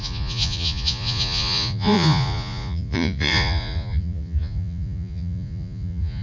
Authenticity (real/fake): fake